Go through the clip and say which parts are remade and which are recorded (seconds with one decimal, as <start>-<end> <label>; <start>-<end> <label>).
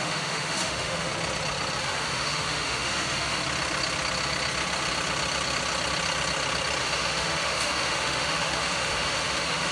0.0-1.1 remade; 1.1-1.8 recorded; 1.8-3.4 remade; 3.4-6.8 recorded; 6.8-9.7 remade